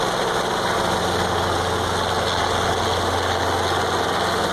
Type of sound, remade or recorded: recorded